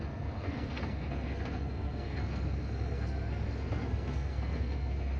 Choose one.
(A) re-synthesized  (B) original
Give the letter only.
A